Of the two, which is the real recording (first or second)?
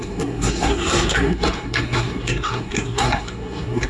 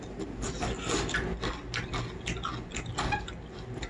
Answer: second